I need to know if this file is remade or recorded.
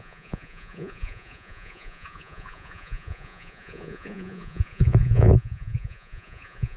remade